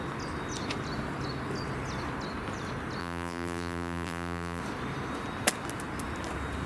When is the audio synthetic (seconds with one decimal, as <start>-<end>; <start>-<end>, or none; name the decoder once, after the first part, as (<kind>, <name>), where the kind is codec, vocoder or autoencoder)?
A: 3.0-4.6 (vocoder, BigVGAN v2)